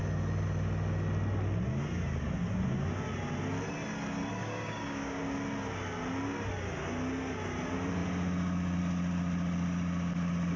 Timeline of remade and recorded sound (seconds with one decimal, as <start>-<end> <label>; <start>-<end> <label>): 0.0-4.4 recorded; 4.4-5.2 remade; 5.2-10.6 recorded